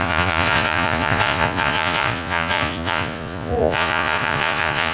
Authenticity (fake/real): fake